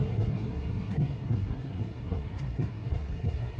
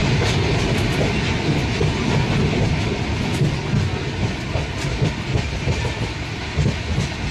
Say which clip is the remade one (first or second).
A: first